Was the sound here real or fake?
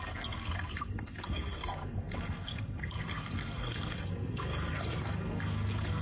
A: fake